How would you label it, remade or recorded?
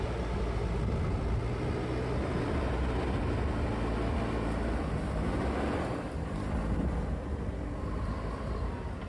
recorded